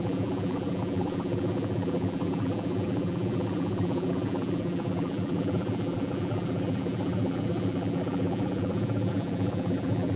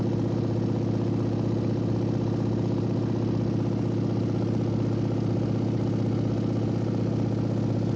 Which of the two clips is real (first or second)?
second